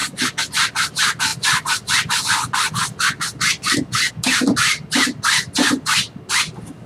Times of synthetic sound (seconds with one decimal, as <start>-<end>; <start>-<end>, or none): 0.0-0.5